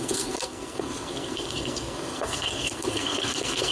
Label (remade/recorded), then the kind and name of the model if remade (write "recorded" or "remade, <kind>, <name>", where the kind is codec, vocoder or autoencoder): remade, codec, SNAC